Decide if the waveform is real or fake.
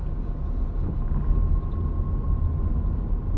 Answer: real